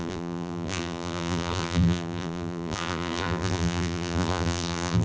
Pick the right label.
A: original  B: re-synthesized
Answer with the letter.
B